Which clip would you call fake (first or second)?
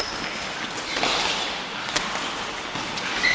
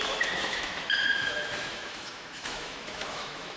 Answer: second